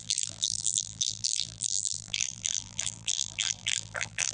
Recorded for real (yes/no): no